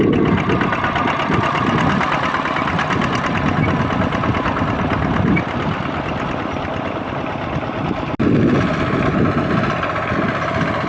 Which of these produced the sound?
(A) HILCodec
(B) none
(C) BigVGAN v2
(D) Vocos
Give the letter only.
B